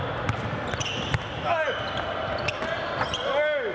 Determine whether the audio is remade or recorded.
recorded